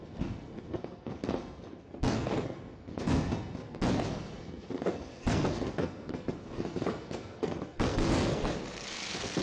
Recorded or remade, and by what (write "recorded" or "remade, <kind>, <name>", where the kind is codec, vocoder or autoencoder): remade, codec, SNAC